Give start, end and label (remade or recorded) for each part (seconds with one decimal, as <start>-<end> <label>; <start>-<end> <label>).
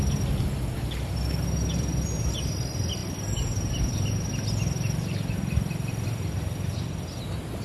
0.0-7.6 recorded